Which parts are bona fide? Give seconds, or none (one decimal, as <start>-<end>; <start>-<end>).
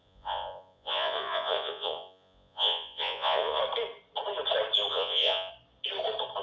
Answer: 3.6-4.9; 5.5-6.4